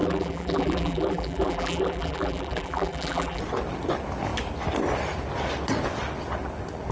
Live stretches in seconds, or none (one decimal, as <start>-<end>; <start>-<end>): 3.4-6.9